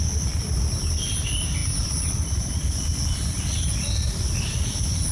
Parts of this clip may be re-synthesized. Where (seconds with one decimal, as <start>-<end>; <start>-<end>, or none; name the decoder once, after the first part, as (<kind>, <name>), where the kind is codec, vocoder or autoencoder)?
none